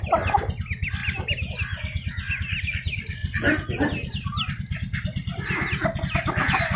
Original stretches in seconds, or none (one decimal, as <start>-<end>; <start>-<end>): 0.0-6.8